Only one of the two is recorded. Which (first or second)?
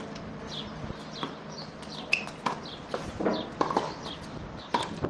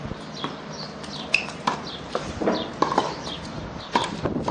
first